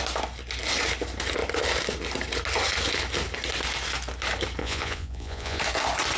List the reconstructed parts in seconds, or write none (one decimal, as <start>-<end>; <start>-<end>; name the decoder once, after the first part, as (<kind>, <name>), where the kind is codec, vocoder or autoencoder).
4.6-5.6 (vocoder, Vocos)